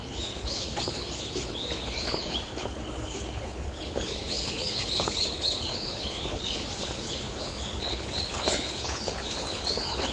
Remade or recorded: remade